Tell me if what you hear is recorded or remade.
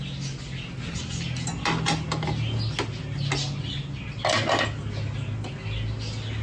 recorded